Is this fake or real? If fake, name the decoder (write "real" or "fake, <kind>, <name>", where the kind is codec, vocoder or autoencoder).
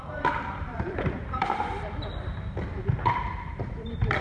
fake, vocoder, BigVGAN v2